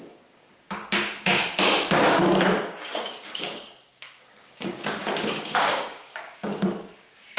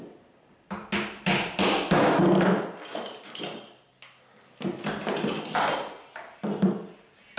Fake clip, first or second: first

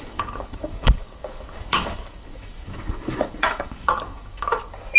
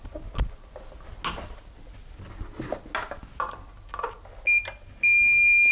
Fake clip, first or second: first